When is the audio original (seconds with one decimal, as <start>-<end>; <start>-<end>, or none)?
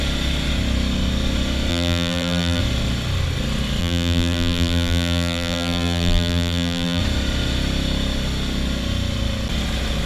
0.0-1.7; 2.6-3.8; 7.0-10.1